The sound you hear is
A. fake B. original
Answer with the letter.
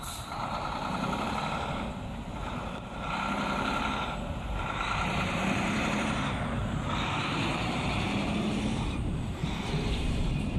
A